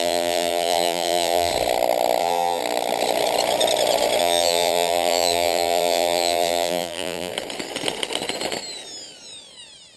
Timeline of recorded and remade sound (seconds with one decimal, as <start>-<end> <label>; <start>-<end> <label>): 0.0-1.5 remade; 1.5-2.2 recorded; 2.2-2.6 remade; 2.6-4.2 recorded; 4.2-7.3 remade; 7.3-10.0 recorded